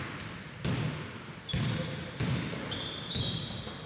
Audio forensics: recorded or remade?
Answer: recorded